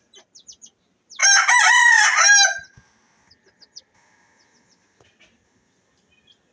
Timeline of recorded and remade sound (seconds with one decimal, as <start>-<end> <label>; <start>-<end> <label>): 0.0-6.5 recorded